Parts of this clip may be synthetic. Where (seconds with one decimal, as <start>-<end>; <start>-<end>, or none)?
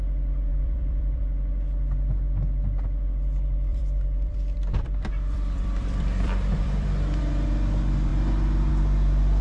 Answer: 0.5-1.2; 3.7-7.2